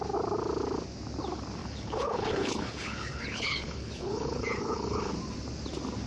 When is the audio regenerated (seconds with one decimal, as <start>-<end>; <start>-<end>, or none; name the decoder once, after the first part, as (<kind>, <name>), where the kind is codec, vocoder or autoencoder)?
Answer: 1.6-5.1 (codec, HILCodec)